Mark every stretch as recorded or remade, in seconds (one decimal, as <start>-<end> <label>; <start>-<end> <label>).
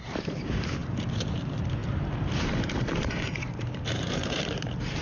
0.0-5.0 remade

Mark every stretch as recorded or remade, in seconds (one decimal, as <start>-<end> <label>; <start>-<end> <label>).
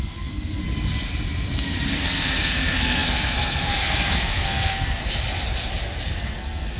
0.0-0.6 remade; 0.6-1.9 recorded; 1.9-5.0 remade; 5.0-6.2 recorded; 6.2-6.8 remade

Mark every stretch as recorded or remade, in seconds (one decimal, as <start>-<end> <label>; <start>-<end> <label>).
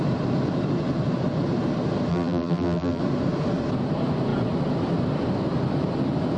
0.0-2.1 recorded; 2.1-3.0 remade; 3.0-6.4 recorded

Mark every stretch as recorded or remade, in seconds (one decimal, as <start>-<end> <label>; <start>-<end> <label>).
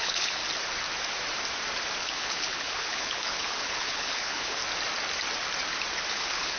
0.0-0.4 remade; 0.4-2.0 recorded; 2.0-4.6 remade; 4.6-6.1 recorded; 6.1-6.6 remade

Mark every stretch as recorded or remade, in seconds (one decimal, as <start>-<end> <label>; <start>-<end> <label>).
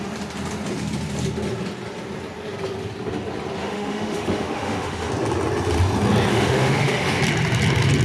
0.0-3.6 recorded; 3.6-5.1 remade; 5.1-6.3 recorded; 6.3-7.2 remade; 7.2-8.0 recorded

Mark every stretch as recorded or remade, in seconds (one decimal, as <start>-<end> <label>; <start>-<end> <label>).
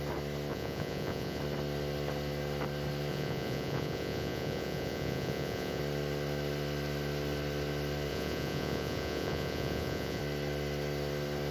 0.0-0.5 recorded; 0.5-1.4 remade; 1.4-3.1 recorded; 3.1-5.8 remade; 5.8-8.1 recorded; 8.1-10.2 remade; 10.2-11.5 recorded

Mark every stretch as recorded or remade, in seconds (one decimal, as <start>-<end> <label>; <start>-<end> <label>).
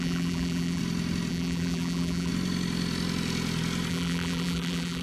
0.0-0.8 remade; 0.8-1.3 recorded; 1.3-2.3 remade; 2.3-3.9 recorded; 3.9-5.0 remade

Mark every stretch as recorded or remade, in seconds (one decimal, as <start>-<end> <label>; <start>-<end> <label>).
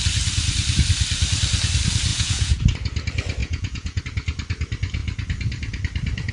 0.0-2.1 recorded; 2.1-2.6 remade; 2.6-3.4 recorded; 3.4-4.0 remade; 4.0-6.3 recorded